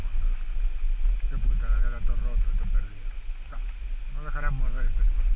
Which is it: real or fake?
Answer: real